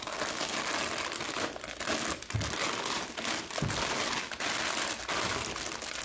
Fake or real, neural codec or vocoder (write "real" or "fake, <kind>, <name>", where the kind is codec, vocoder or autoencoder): real